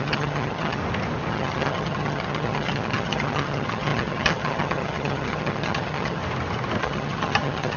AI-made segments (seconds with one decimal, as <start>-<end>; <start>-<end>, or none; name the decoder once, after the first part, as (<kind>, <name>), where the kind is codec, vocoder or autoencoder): 0.0-0.8 (vocoder, HiFi-GAN); 1.3-6.2; 6.8-7.8